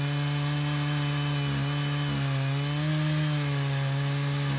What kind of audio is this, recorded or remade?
recorded